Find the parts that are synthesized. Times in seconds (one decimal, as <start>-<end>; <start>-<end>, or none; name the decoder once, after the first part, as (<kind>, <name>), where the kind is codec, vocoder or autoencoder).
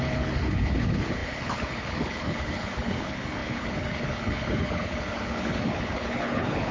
0.0-6.7 (codec, HILCodec)